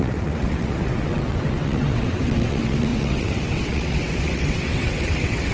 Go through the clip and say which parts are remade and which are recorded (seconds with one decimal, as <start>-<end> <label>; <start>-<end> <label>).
0.0-5.5 remade